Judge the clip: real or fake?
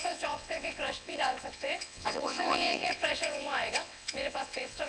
fake